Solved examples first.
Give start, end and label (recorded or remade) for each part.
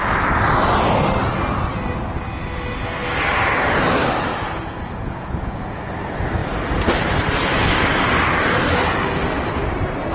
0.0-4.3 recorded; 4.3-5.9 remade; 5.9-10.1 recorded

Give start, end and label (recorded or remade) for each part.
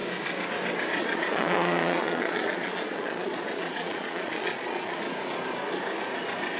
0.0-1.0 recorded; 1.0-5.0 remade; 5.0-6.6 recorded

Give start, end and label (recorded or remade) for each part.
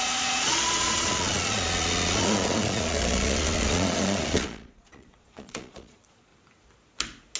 0.0-6.3 remade; 6.3-7.4 recorded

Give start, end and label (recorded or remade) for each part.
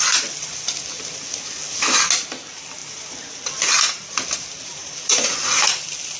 0.0-4.8 recorded; 4.8-5.6 remade; 5.6-6.2 recorded